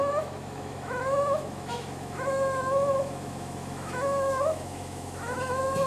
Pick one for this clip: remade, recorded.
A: remade